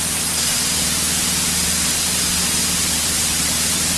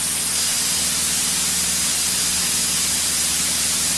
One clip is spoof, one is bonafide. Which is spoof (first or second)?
first